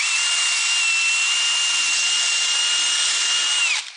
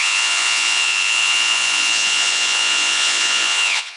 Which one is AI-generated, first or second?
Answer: second